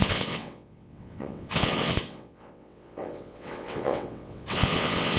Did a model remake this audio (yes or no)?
yes